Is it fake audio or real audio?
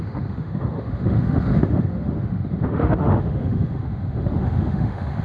fake